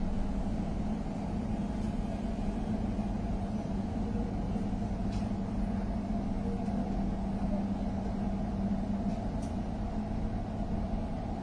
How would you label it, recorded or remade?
recorded